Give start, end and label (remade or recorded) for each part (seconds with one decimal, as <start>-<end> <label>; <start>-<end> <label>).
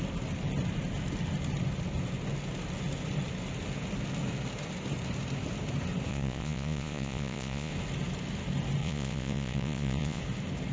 0.0-6.1 recorded; 6.1-7.7 remade; 7.7-8.8 recorded; 8.8-10.2 remade; 10.2-10.7 recorded